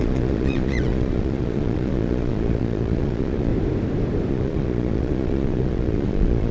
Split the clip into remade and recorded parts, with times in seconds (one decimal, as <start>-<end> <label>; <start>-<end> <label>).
0.0-3.5 remade; 3.5-4.3 recorded; 4.3-6.5 remade